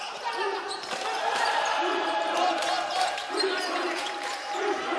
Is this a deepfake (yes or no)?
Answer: yes